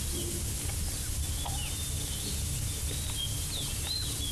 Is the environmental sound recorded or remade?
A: recorded